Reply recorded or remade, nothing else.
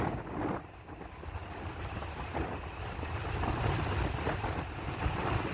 recorded